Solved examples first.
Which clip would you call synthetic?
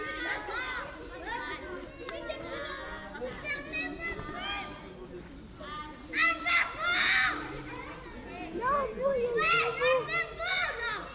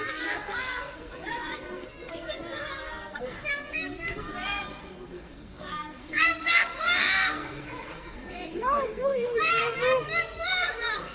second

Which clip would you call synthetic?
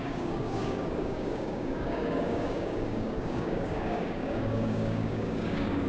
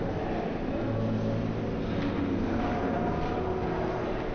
first